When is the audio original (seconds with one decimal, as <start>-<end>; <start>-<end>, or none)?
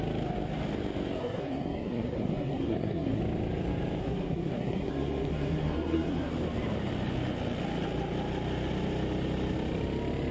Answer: 0.0-1.2; 3.2-4.0; 6.3-10.3